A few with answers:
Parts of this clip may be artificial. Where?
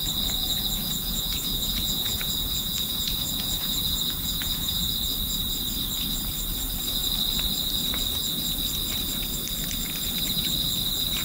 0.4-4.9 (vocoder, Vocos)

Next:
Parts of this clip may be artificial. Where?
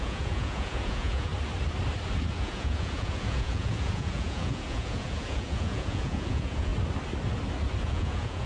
0.0-1.3 (vocoder, Vocos); 2.3-6.7; 7.8-8.5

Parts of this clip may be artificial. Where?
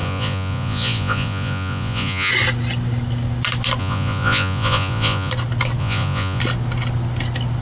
0.0-2.3 (vocoder, Vocos); 3.8-5.3; 5.8-6.4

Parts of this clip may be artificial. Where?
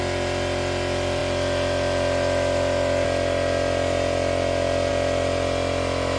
none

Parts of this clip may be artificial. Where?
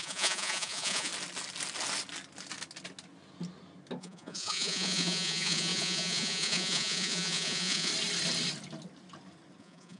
0.0-1.1 (vocoder, Vocos); 4.0-7.9; 9.6-10.0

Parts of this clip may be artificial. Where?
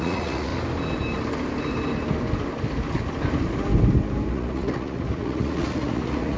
0.0-0.5 (vocoder, Vocos); 4.3-6.4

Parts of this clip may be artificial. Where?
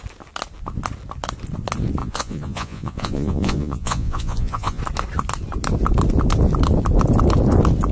2.0-4.8 (vocoder, Vocos)